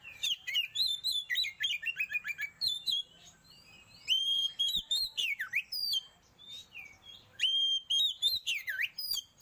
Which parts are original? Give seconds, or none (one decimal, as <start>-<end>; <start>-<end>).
0.8-2.3